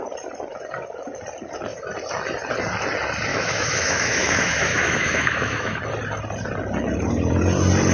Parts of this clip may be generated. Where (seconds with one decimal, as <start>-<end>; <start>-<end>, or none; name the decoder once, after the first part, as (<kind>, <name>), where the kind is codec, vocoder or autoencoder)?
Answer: 3.3-5.8 (autoencoder, DAC-VAE)